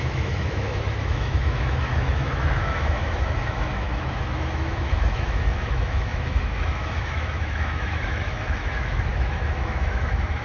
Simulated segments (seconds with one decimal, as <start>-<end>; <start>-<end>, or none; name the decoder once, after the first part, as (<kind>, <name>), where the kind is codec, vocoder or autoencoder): 0.0-10.4 (autoencoder, DAC-VAE)